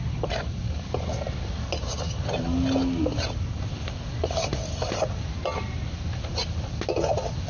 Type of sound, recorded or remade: recorded